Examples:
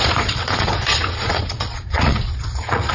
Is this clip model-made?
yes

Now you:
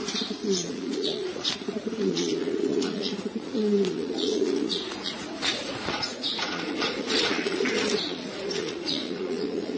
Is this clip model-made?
yes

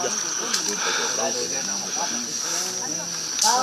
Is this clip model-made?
no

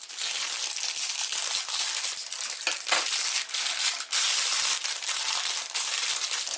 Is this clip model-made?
no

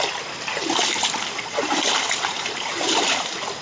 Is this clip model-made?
no